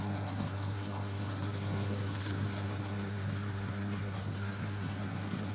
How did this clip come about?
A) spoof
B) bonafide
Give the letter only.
A